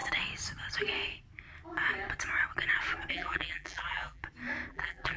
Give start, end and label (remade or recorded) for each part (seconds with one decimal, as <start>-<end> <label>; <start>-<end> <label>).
0.0-3.1 recorded; 3.1-4.2 remade; 4.2-4.7 recorded; 4.7-5.2 remade